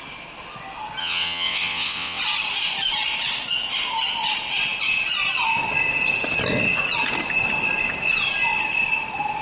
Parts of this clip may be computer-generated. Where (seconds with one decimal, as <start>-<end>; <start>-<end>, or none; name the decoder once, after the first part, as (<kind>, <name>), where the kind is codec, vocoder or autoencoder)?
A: 1.0-2.2 (vocoder, WaveNeXt)